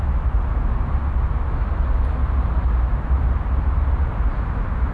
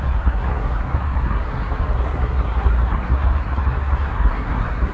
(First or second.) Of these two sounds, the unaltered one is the first